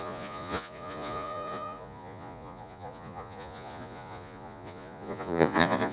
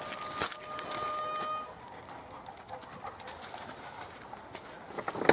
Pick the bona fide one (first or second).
second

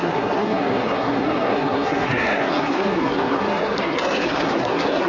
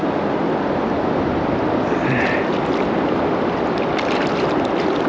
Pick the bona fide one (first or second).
second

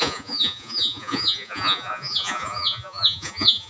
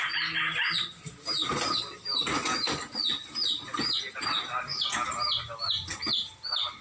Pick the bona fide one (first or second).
second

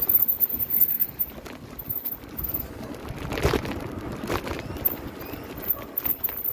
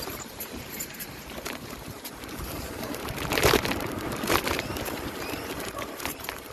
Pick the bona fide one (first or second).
first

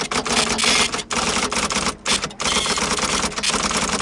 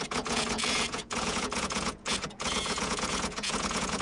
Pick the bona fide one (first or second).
first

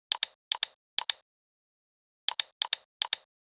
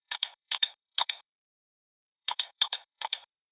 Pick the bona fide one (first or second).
first